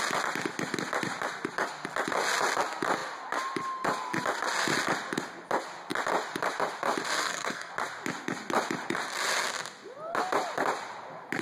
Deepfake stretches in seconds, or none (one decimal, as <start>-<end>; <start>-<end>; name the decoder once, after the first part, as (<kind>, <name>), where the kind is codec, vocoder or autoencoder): 7.2-7.7 (codec, SNAC)